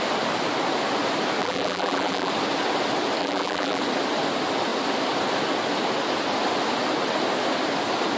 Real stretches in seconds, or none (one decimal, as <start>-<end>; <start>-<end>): 0.0-1.4; 2.3-3.2; 3.8-8.2

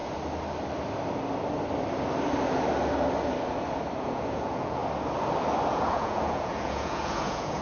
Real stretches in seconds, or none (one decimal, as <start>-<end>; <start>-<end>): 0.0-4.0; 4.8-5.7

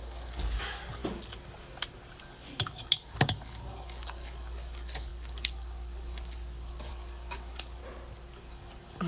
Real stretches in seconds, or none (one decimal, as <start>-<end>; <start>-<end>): 1.0-2.2; 7.8-8.5

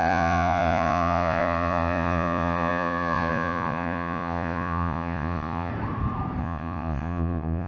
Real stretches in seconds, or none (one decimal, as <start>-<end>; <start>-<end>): 5.7-6.4

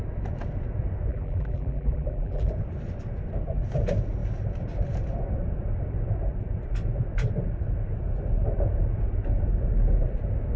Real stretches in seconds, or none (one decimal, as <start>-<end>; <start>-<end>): 0.0-1.1; 2.5-10.6

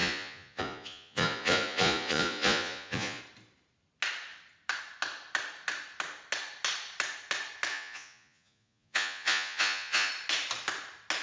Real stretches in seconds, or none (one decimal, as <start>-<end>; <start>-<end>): 3.2-7.7; 10.1-11.2